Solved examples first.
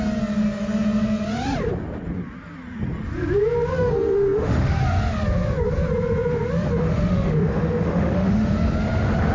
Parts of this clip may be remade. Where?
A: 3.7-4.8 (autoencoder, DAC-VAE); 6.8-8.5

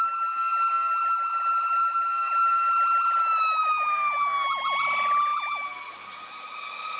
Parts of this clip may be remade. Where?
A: 3.2-4.4 (autoencoder, DAC-VAE)